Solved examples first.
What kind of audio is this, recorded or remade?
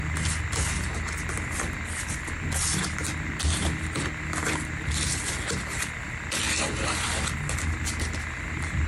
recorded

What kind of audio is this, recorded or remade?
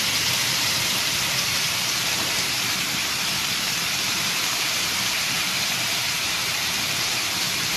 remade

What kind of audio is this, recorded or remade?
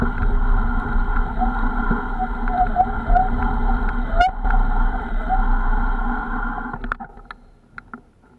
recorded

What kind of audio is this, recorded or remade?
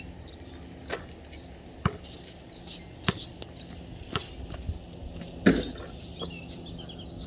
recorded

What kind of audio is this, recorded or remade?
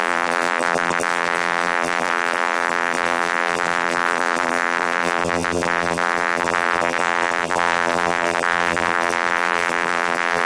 remade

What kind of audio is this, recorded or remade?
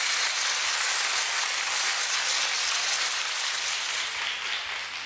recorded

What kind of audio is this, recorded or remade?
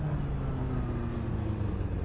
recorded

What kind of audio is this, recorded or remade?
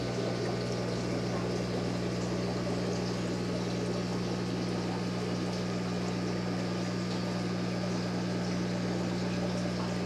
recorded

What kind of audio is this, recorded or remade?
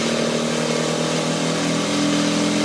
recorded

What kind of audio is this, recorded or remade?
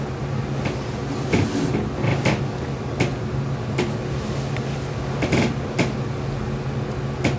recorded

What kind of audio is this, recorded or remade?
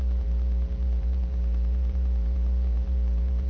remade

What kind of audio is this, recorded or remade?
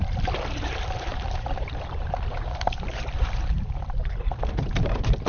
remade